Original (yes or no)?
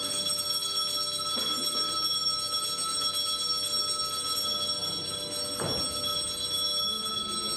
yes